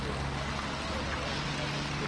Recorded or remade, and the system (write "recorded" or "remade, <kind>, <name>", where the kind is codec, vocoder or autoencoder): recorded